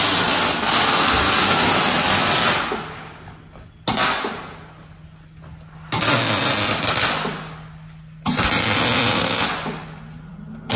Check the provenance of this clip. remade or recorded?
recorded